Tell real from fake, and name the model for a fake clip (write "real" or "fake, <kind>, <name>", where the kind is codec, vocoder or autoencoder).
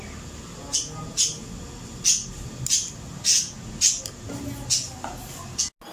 real